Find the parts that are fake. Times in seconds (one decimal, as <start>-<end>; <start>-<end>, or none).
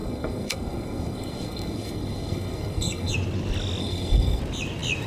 0.0-3.1; 3.8-4.4